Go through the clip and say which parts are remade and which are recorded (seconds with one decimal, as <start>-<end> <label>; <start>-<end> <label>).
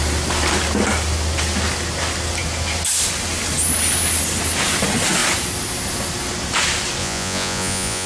0.0-7.0 recorded; 7.0-8.1 remade